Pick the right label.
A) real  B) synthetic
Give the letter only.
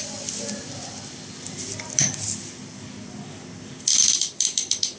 A